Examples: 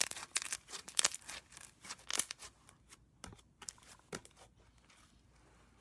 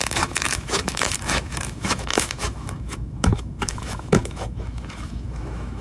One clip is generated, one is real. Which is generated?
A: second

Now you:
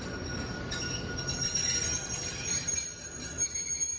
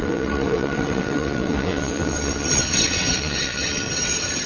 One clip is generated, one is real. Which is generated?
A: second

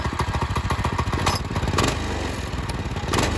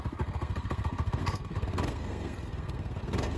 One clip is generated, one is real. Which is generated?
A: second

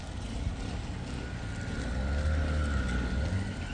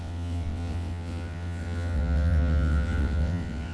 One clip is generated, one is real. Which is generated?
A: second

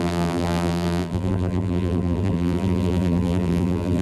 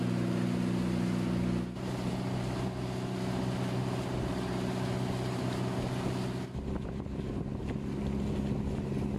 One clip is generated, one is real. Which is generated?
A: first